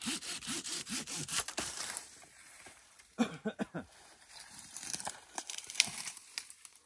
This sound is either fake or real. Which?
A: fake